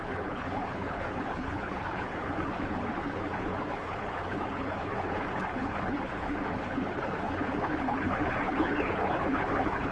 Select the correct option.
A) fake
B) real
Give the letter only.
A